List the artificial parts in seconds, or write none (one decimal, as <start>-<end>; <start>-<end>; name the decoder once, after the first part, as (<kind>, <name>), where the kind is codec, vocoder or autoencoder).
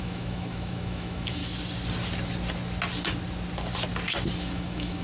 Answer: 0.0-1.4 (autoencoder, DAC-VAE); 4.4-5.0